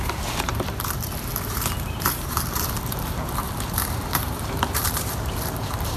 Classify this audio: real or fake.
fake